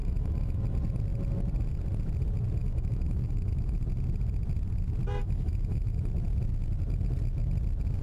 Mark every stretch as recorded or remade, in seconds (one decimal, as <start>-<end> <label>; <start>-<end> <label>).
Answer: 0.0-0.6 remade; 0.6-2.6 recorded; 2.6-3.8 remade; 3.8-5.2 recorded; 5.2-6.0 remade; 6.0-8.0 recorded